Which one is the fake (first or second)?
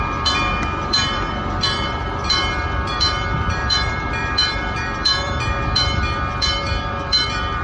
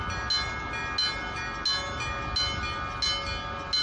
first